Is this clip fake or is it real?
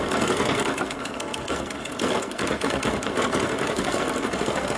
fake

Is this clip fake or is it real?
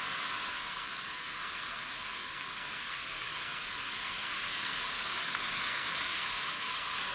fake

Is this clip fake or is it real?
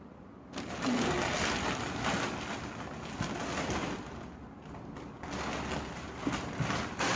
real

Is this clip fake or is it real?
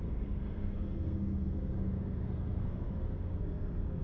fake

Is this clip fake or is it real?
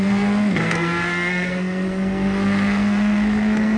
fake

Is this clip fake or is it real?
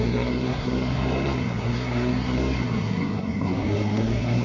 fake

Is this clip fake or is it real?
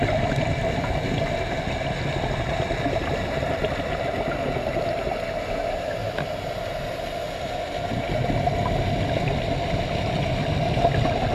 real